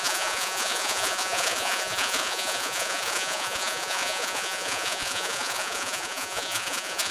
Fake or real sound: fake